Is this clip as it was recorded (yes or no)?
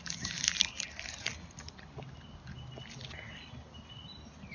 yes